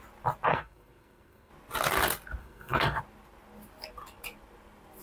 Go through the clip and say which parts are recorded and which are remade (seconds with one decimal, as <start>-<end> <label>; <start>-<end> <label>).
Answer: 0.0-0.5 recorded; 0.5-1.5 remade; 1.5-2.4 recorded; 2.4-3.0 remade; 3.0-5.0 recorded